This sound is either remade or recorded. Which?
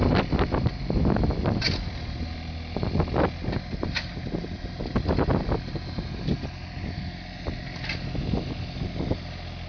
recorded